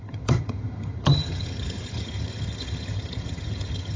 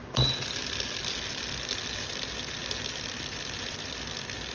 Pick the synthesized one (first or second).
first